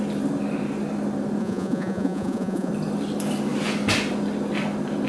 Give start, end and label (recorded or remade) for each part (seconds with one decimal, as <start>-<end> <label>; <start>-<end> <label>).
0.0-1.4 recorded; 1.4-2.7 remade; 2.7-5.1 recorded